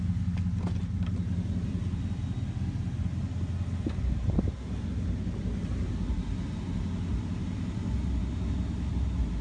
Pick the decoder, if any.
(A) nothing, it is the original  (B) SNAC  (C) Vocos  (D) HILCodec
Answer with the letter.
A